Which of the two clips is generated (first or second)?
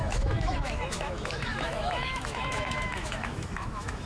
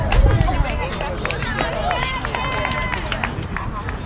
first